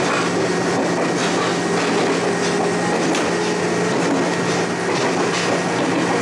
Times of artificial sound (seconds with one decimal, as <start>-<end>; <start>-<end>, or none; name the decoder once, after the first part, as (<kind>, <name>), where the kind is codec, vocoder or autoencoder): none